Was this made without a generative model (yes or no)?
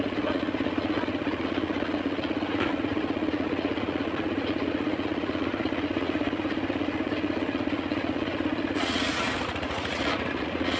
no